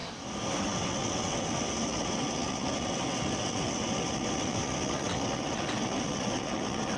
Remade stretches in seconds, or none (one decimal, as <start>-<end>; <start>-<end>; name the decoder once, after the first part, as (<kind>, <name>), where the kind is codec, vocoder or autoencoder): 0.6-7.0 (vocoder, WaveNeXt)